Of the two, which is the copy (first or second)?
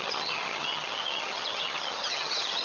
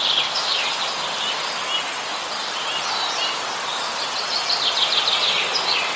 first